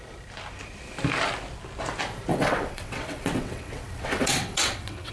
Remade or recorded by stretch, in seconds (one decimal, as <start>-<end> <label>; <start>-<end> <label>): 0.0-2.3 recorded; 2.3-5.1 remade